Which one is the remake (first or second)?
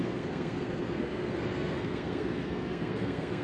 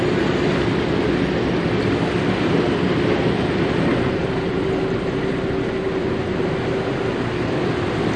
first